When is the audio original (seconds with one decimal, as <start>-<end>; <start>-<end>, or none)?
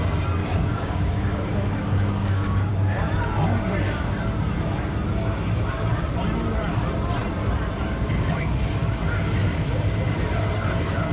0.0-0.4; 2.7-11.1